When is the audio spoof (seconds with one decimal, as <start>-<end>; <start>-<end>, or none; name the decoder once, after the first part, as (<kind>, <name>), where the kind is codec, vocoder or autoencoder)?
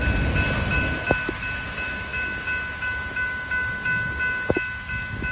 none